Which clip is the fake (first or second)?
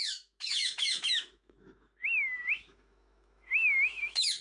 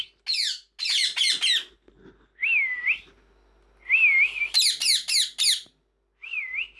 first